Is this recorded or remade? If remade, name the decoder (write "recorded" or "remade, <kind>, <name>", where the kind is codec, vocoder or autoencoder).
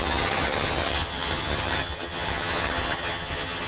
remade, vocoder, HiFi-GAN